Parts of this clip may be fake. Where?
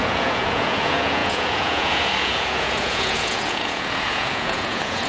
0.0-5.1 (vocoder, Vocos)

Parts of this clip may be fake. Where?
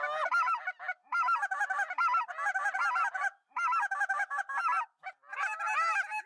none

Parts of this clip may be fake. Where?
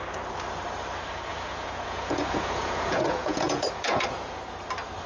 1.3-4.4 (vocoder, Vocos)